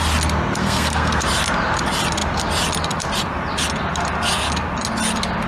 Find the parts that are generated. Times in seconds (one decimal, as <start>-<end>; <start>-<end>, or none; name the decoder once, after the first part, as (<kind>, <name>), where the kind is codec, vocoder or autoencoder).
0.6-1.2 (codec, SNAC)